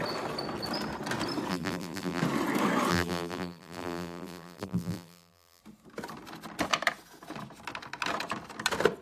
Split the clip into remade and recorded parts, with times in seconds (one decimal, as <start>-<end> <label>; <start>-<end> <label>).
0.0-1.5 recorded; 1.5-2.2 remade; 2.2-2.9 recorded; 2.9-5.6 remade; 5.6-9.0 recorded

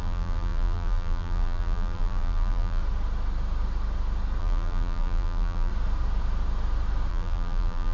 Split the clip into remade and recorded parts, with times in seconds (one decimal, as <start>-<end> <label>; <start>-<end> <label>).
0.0-2.8 remade; 2.8-4.4 recorded; 4.4-5.7 remade; 5.7-7.1 recorded; 7.1-7.9 remade

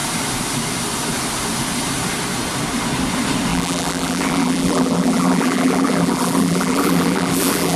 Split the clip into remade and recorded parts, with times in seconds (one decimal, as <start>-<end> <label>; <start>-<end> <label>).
0.0-3.5 recorded; 3.5-7.8 remade

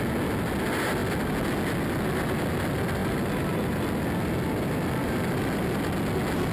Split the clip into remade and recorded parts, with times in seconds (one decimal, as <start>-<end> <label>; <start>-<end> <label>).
0.0-3.0 recorded; 3.0-5.3 remade; 5.3-6.5 recorded

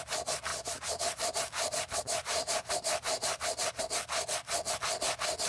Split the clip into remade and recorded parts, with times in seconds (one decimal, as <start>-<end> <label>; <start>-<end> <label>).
0.0-0.5 recorded; 0.5-3.8 remade; 3.8-5.5 recorded

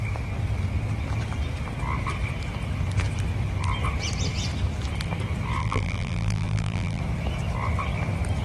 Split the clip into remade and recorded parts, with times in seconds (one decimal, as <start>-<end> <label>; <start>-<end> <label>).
0.0-5.6 recorded; 5.6-7.0 remade; 7.0-8.4 recorded